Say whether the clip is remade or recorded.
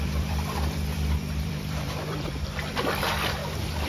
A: remade